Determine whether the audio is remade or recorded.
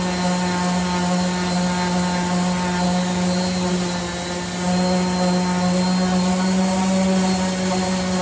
recorded